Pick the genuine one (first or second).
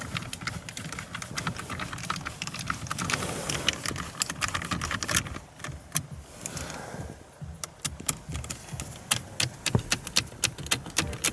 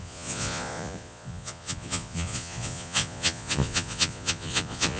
first